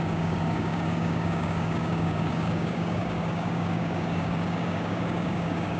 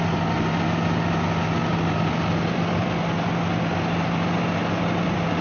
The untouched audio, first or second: second